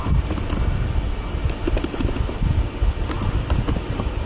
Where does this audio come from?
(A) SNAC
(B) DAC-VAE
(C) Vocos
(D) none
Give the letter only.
D